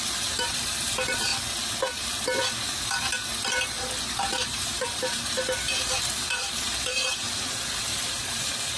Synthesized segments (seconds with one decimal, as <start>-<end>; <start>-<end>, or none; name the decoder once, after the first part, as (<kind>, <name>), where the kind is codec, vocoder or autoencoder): 0.0-1.3 (vocoder, BigVGAN v2); 4.1-8.8